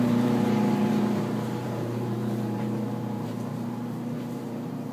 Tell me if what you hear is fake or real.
fake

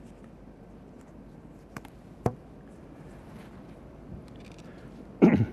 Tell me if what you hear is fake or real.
fake